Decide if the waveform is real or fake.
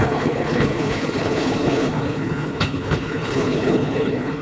fake